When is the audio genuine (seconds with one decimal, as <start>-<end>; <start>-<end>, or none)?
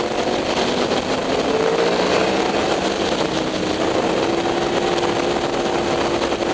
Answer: 0.0-6.5